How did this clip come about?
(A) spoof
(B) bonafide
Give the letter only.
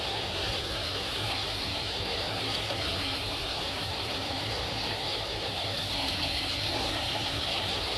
A